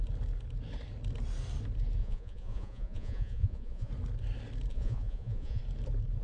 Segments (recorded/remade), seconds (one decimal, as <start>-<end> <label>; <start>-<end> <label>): 0.0-2.0 recorded; 2.0-3.9 remade; 3.9-4.7 recorded; 4.7-5.6 remade; 5.6-6.2 recorded